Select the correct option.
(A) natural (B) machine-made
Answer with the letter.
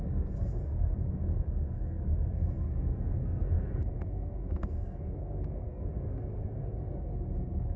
B